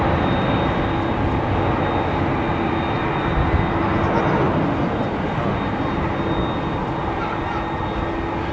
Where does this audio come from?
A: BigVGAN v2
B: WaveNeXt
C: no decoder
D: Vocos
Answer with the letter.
C